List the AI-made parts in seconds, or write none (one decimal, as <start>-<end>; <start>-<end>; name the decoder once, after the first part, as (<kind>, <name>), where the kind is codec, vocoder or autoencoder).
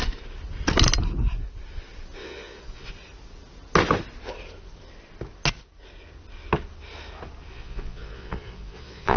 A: 2.2-2.9 (vocoder, Vocos); 7.5-9.2